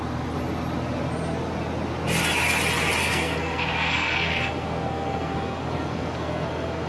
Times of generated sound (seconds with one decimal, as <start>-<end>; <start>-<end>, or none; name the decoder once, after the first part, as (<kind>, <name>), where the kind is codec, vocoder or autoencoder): 3.0-6.9 (codec, SNAC)